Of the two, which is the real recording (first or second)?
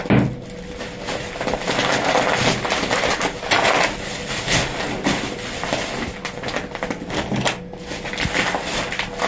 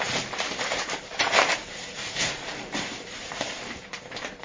first